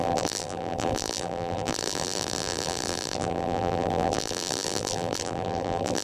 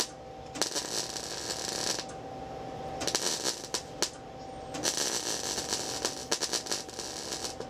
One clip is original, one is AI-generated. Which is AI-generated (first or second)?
first